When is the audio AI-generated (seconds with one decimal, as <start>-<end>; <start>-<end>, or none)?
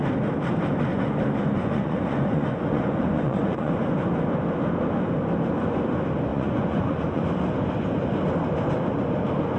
0.9-3.7; 6.3-7.2